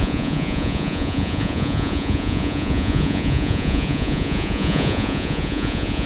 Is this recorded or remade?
remade